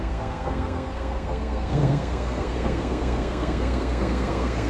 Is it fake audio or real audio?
fake